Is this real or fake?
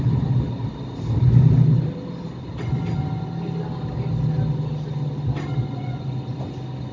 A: real